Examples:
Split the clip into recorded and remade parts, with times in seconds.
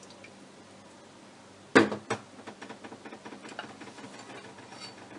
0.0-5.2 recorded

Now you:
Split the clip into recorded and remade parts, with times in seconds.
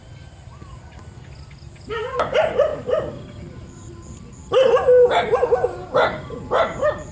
0.0-7.1 recorded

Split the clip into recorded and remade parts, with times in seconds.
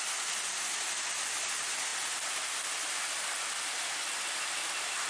0.0-1.9 recorded; 1.9-5.1 remade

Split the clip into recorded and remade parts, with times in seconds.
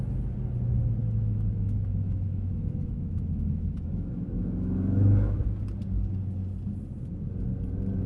0.0-1.0 recorded; 1.0-5.4 remade; 5.4-8.1 recorded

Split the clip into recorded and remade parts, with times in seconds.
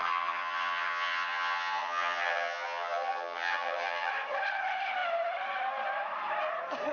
0.0-4.1 remade; 4.1-6.9 recorded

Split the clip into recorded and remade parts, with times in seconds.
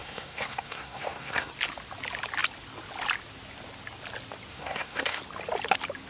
0.0-1.5 remade; 1.5-4.5 recorded; 4.5-5.2 remade; 5.2-6.1 recorded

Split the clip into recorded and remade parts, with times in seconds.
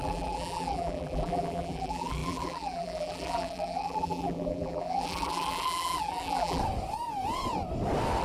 0.0-6.6 remade; 6.6-8.2 recorded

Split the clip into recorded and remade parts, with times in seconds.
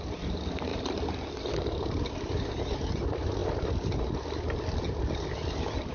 0.0-0.7 recorded; 0.7-2.5 remade; 2.5-5.9 recorded